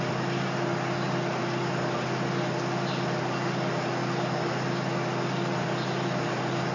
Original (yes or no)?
yes